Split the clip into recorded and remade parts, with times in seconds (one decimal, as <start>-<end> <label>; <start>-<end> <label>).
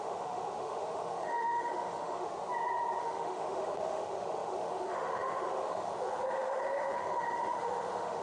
0.0-2.3 remade; 2.3-3.0 recorded; 3.0-8.2 remade